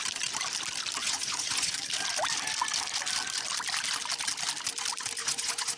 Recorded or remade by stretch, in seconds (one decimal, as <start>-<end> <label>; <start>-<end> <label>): 0.0-1.0 recorded; 1.0-1.7 remade; 1.7-5.2 recorded; 5.2-5.8 remade